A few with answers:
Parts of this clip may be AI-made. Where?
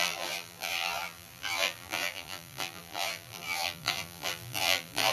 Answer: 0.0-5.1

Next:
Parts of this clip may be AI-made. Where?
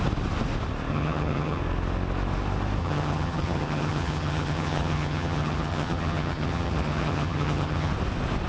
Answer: 0.9-1.6; 2.8-7.9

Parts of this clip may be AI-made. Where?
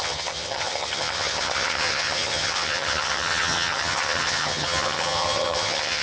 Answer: 0.0-6.0